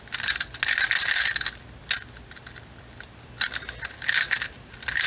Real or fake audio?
real